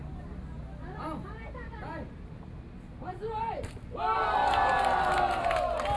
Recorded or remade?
recorded